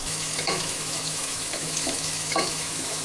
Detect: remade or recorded remade